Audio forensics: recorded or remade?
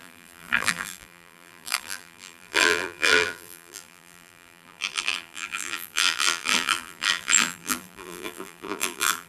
remade